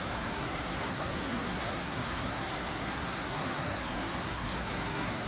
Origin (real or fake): fake